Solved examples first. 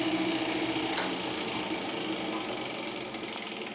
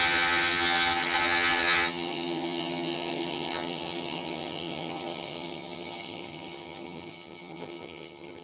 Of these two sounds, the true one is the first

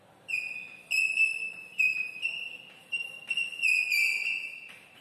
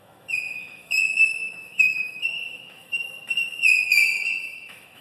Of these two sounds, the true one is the first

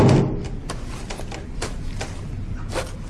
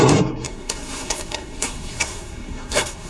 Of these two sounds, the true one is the first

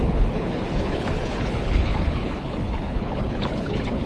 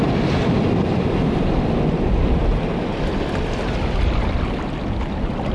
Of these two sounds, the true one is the second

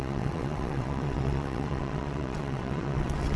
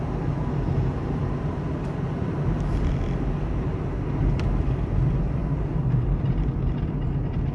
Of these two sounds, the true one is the second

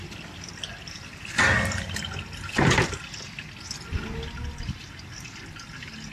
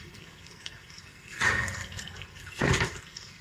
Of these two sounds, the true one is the first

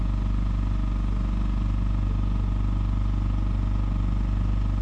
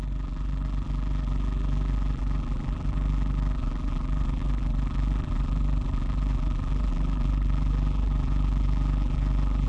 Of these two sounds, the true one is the first